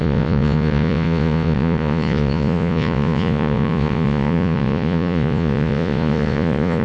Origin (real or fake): fake